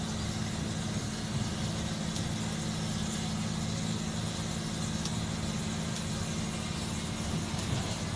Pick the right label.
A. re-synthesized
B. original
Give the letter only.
B